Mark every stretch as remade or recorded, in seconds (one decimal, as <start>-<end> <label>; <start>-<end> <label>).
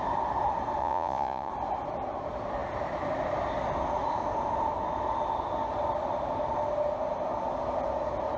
0.0-0.8 recorded; 0.8-1.5 remade; 1.5-8.4 recorded